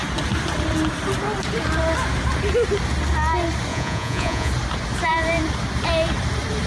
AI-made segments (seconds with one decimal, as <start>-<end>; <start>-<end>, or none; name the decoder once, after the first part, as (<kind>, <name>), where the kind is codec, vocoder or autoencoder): 3.7-4.5 (vocoder, Vocos)